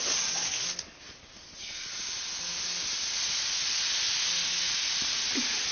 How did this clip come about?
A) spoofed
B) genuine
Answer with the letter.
B